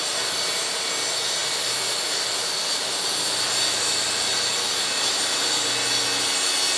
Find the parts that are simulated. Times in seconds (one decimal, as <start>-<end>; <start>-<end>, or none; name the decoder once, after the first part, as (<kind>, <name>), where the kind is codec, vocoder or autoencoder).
none